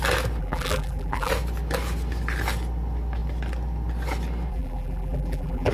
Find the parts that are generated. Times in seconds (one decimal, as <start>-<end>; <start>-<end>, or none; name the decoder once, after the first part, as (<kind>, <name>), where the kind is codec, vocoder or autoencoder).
0.4-1.3 (vocoder, BigVGAN v2); 4.5-5.7